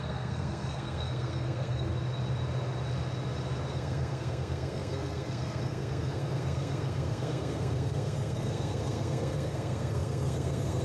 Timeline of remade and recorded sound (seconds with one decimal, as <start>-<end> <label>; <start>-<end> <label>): 0.0-1.9 remade; 1.9-3.7 recorded; 3.7-10.8 remade